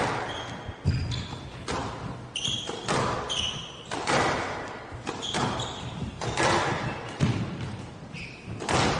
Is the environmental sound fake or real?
real